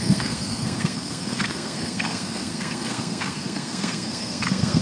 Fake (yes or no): yes